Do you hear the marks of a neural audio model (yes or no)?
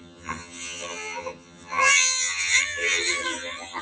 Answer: yes